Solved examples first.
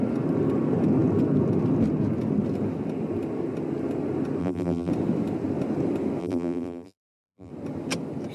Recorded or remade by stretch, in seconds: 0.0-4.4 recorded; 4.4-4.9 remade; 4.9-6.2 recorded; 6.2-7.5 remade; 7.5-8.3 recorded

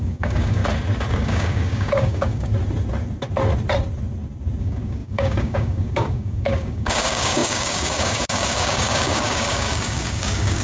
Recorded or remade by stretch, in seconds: 0.0-0.6 remade; 0.6-1.1 recorded; 1.1-2.5 remade; 2.5-4.6 recorded; 4.6-10.6 remade

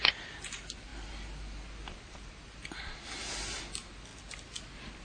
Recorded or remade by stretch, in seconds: 0.0-4.1 recorded; 4.1-5.0 remade

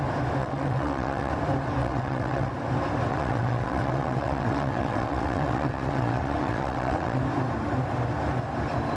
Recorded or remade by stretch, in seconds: 0.0-0.4 recorded; 0.4-1.3 remade; 1.3-1.8 recorded; 1.8-2.5 remade; 2.5-3.1 recorded; 3.1-7.2 remade; 7.2-9.0 recorded

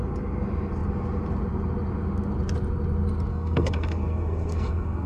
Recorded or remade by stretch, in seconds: 0.0-3.3 recorded; 3.3-5.1 remade